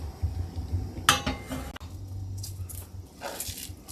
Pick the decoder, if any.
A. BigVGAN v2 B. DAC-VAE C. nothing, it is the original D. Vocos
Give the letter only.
C